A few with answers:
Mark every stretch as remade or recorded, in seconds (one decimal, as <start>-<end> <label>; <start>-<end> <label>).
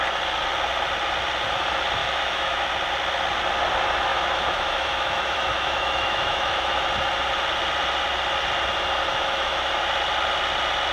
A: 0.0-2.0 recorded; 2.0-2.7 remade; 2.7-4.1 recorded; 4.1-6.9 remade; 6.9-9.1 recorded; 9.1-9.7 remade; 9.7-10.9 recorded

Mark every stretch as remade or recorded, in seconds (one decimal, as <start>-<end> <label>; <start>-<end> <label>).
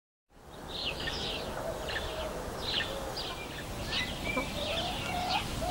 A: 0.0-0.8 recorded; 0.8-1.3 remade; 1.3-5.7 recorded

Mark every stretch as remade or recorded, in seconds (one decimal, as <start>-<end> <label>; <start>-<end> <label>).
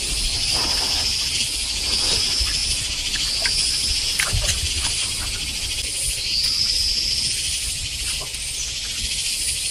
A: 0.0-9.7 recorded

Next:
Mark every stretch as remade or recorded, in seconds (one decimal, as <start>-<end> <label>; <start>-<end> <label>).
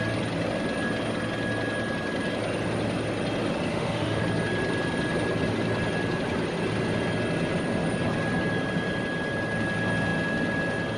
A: 0.0-3.7 recorded; 3.7-4.2 remade; 4.2-11.0 recorded